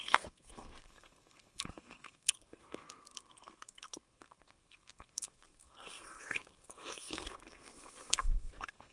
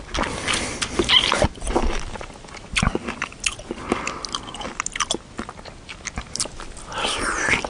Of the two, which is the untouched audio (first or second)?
second